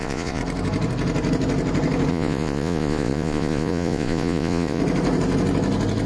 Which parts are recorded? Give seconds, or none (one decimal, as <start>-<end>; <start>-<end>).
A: 0.4-2.1; 4.8-6.1